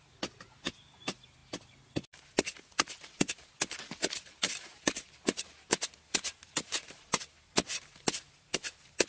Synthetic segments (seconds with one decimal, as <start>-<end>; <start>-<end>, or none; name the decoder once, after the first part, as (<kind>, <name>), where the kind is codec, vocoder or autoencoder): none

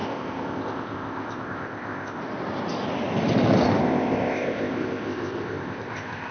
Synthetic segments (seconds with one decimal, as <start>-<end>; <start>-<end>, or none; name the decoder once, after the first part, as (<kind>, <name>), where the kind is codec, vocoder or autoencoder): 0.0-2.2 (codec, ZipCodec); 3.8-6.3

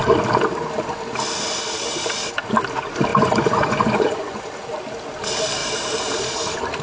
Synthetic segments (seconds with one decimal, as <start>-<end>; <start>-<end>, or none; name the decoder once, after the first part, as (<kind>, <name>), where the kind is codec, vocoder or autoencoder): 3.1-4.5 (vocoder, Vocos)

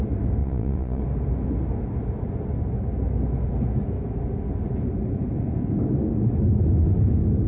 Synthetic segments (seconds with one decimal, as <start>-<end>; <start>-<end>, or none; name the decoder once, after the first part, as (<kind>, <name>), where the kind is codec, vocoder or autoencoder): 0.4-1.0 (vocoder, Vocos)

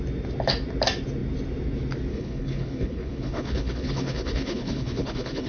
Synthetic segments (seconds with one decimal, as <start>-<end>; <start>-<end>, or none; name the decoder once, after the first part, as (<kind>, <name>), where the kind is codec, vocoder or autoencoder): 2.1-5.5 (codec, HILCodec)

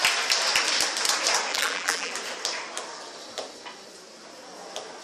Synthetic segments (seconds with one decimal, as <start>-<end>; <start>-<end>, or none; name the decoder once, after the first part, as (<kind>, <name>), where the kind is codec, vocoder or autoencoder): 1.5-2.1 (vocoder, BigVGAN v2)

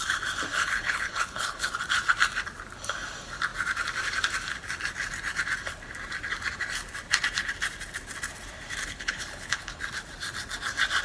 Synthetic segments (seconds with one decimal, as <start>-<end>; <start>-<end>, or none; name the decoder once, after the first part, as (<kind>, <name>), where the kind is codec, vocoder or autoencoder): 0.5-1.7 (codec, HILCodec); 8.8-9.8